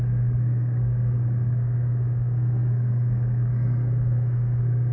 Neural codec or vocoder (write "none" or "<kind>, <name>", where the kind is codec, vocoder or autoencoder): codec, SNAC